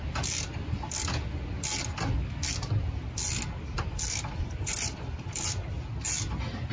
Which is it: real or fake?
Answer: real